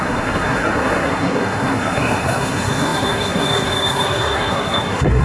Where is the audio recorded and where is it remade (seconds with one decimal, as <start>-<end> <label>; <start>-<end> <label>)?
0.0-5.2 remade